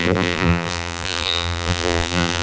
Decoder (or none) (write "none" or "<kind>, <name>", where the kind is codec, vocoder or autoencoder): vocoder, BigVGAN v2